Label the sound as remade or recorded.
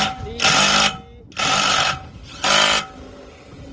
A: recorded